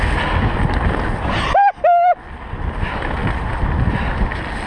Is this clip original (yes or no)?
yes